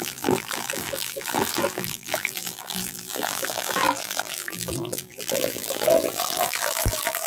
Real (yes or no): no